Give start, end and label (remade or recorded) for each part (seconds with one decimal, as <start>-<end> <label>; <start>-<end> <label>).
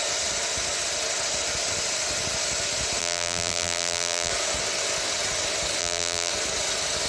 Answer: 0.0-3.0 recorded; 3.0-4.3 remade; 4.3-5.8 recorded; 5.8-6.3 remade; 6.3-7.1 recorded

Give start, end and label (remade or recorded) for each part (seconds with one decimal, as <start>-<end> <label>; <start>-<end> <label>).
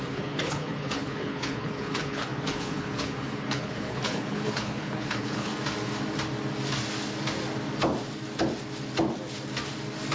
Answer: 0.0-5.5 remade; 5.5-10.1 recorded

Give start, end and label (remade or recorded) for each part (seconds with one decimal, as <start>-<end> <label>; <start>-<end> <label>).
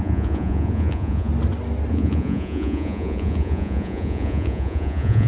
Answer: 0.0-1.3 remade; 1.3-1.9 recorded; 1.9-5.3 remade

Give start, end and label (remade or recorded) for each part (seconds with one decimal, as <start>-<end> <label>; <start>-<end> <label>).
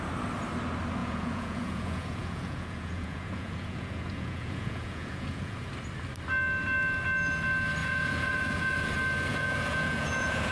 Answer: 0.0-1.0 recorded; 1.0-5.7 remade; 5.7-7.8 recorded; 7.8-8.9 remade; 8.9-9.3 recorded; 9.3-10.5 remade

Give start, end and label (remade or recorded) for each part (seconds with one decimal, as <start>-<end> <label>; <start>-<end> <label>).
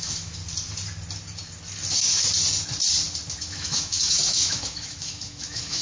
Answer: 0.0-0.4 remade; 0.4-3.4 recorded; 3.4-5.8 remade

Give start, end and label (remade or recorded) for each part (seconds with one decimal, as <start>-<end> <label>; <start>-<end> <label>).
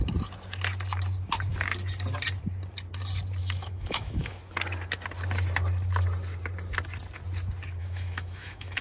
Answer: 0.0-3.4 recorded; 3.4-4.4 remade; 4.4-7.8 recorded; 7.8-8.8 remade